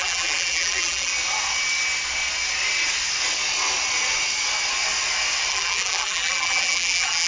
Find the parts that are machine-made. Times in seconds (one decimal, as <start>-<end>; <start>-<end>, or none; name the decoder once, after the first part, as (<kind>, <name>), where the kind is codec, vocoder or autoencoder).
0.0-1.1 (vocoder, BigVGAN v2); 5.5-7.3